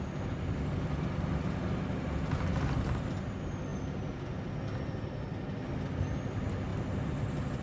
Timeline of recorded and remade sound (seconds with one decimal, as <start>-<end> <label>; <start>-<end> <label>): 0.0-7.6 recorded